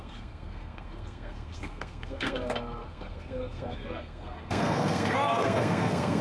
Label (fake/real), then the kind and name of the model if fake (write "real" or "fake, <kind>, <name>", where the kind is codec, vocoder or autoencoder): fake, codec, SNAC